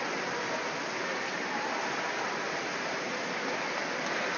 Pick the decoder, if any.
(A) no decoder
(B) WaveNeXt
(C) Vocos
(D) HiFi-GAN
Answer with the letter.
A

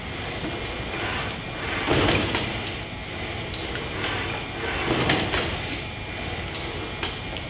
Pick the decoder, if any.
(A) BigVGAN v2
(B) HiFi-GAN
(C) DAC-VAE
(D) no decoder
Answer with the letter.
D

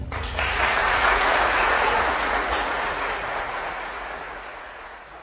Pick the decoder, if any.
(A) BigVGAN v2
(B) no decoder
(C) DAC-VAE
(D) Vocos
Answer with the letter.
D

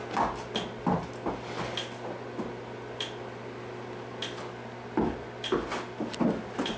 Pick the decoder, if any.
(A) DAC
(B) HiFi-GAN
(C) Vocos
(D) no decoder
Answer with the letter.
D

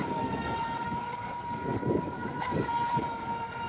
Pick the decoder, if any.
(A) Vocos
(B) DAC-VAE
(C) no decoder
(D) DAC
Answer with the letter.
D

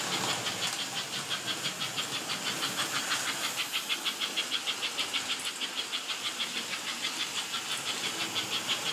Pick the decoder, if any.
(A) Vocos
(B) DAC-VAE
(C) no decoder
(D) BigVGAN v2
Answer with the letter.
C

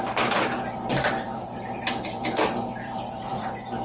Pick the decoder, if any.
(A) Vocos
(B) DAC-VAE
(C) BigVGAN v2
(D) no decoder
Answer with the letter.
C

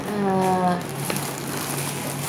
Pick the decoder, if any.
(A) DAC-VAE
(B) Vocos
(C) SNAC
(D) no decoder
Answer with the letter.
D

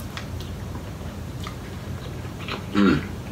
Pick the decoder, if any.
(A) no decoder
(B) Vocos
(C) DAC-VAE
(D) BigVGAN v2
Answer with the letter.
D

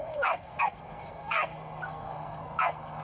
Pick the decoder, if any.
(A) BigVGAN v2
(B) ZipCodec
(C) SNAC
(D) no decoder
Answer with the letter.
C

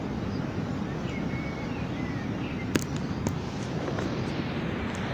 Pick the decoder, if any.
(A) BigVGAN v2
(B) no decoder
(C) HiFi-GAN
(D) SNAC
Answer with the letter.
B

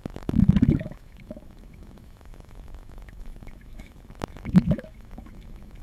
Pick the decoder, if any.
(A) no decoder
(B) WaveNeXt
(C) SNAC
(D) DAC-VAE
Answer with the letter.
D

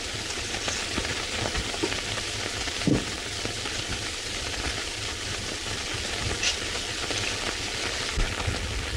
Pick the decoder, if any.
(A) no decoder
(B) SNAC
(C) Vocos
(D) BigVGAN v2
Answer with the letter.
A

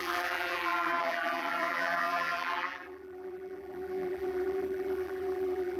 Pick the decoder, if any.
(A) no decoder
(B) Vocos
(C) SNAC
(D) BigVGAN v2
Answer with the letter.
D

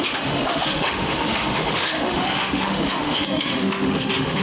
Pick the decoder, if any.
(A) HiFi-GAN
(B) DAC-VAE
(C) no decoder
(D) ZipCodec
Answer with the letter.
B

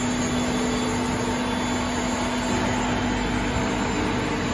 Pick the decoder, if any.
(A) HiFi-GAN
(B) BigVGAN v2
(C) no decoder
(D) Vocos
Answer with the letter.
C